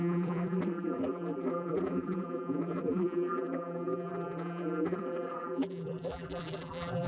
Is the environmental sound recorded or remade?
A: remade